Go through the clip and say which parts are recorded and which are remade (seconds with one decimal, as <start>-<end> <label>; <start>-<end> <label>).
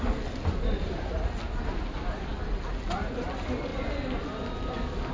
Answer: 0.0-5.1 recorded